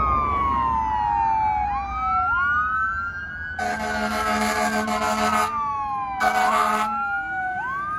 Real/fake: real